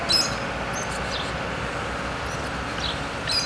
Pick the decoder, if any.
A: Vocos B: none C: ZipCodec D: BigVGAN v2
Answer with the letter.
B